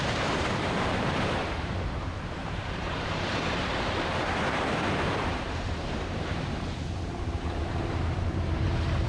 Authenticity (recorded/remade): remade